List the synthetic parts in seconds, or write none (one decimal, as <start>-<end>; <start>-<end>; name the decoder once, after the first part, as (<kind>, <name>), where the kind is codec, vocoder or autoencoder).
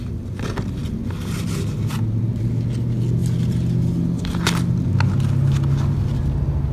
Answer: none